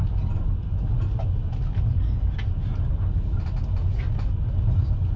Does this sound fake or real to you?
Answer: real